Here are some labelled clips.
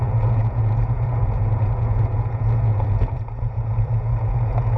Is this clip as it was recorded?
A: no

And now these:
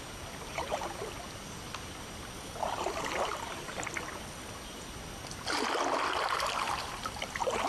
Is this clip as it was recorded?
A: yes